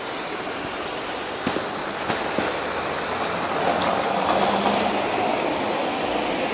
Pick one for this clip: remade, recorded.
recorded